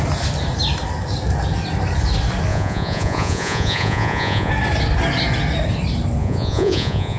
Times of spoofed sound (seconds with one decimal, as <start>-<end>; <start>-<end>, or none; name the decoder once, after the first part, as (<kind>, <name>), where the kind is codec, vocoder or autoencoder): 2.5-4.5 (vocoder, Vocos); 6.2-7.2